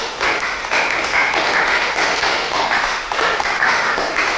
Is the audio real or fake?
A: fake